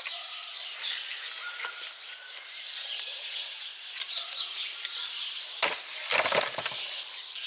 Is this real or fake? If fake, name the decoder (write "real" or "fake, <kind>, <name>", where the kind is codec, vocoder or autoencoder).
real